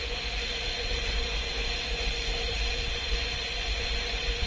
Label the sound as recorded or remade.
remade